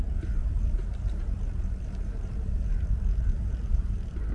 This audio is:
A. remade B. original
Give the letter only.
A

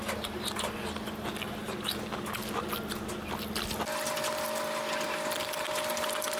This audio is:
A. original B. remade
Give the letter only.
B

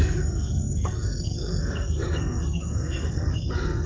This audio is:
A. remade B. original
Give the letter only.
A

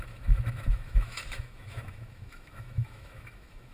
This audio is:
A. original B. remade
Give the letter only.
B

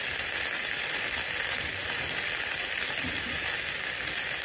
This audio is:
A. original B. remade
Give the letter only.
B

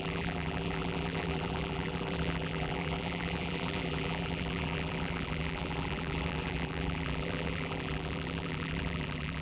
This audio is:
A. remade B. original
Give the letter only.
A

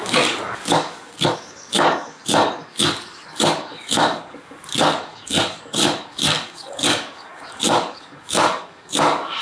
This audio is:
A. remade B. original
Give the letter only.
A